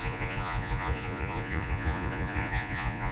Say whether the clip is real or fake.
fake